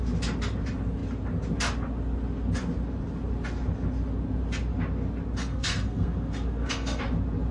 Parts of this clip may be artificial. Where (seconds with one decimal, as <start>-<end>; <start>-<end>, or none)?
5.4-7.0